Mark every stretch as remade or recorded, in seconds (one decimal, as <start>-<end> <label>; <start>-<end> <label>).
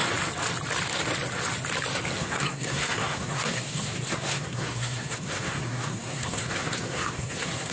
0.0-2.2 recorded; 2.2-7.7 remade